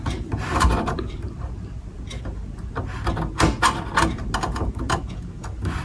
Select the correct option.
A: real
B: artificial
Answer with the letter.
A